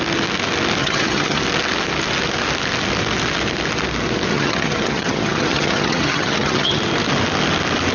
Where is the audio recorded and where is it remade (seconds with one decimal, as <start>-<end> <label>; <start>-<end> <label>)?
0.0-0.8 recorded; 0.8-1.4 remade; 1.4-4.3 recorded; 4.3-6.8 remade; 6.8-7.9 recorded